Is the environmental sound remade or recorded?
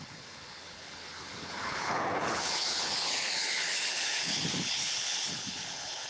remade